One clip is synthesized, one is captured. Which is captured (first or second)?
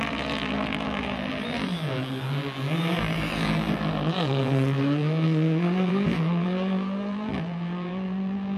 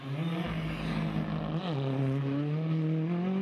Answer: second